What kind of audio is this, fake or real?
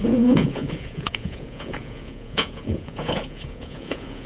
fake